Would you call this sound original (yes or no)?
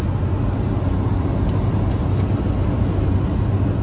yes